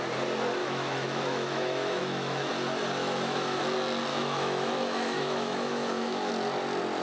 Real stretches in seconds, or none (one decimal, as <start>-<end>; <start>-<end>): 0.0-0.6; 2.5-3.0; 3.6-4.1; 6.3-7.0